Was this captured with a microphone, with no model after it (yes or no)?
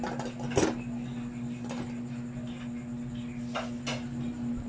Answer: yes